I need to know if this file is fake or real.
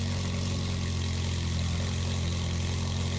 real